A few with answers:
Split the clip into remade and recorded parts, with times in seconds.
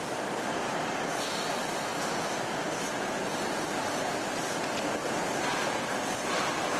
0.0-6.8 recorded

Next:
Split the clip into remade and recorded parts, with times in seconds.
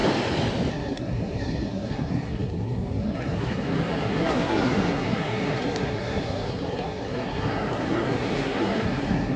0.0-0.7 recorded; 0.7-9.4 remade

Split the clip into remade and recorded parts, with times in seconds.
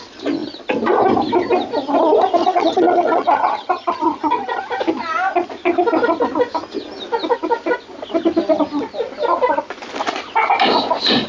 0.0-2.4 recorded; 2.4-4.6 remade; 4.6-11.3 recorded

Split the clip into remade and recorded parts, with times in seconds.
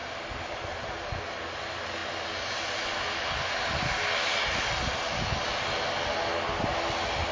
0.0-7.3 recorded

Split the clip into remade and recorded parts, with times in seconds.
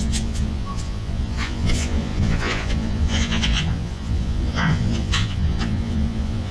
0.0-6.5 remade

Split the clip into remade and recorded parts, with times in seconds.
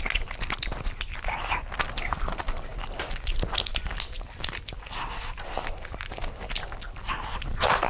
0.0-7.9 recorded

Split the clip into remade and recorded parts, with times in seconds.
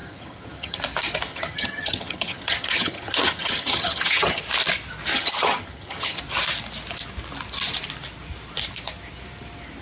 0.0-0.8 remade; 0.8-1.3 recorded; 1.3-4.4 remade; 4.4-5.1 recorded; 5.1-6.2 remade; 6.2-9.8 recorded